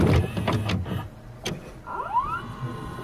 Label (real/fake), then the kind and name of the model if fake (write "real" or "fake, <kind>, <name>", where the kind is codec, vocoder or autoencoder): real